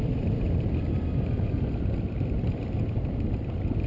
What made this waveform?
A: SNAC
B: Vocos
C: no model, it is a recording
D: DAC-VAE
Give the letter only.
C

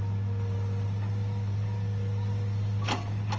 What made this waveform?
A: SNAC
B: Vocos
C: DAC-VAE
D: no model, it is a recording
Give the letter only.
D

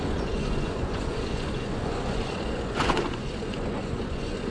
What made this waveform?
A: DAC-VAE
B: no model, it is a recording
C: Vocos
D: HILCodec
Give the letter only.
C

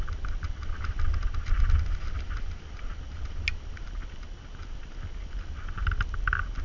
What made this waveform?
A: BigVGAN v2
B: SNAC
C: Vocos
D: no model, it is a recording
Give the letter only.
D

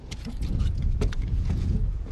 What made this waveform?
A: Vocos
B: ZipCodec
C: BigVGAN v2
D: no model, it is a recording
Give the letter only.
A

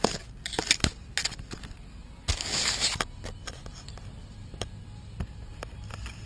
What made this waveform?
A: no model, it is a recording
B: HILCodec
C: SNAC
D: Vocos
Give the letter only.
A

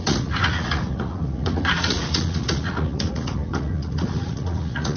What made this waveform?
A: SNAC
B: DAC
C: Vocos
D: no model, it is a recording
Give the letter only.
C